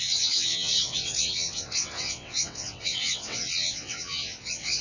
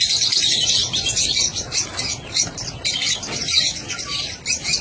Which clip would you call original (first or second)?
second